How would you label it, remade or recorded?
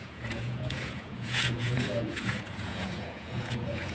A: remade